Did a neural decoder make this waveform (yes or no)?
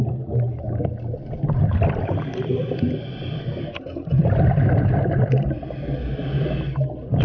no